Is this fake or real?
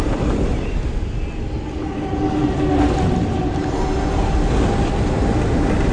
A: real